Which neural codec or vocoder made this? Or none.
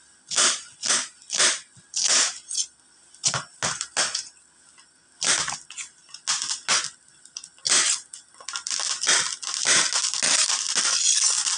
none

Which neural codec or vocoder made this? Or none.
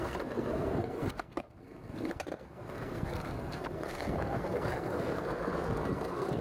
codec, SNAC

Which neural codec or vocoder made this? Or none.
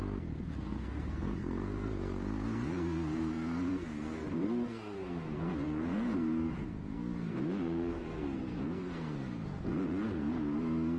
codec, SNAC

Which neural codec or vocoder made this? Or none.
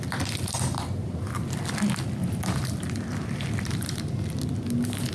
none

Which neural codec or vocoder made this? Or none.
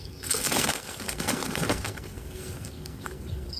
codec, SNAC